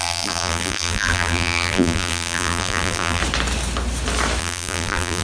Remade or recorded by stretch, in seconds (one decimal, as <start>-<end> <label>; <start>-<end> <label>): 0.0-3.2 remade; 3.2-4.4 recorded; 4.4-5.2 remade